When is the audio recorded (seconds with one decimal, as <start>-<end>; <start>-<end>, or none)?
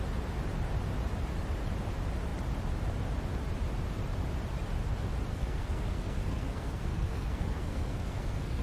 0.0-5.3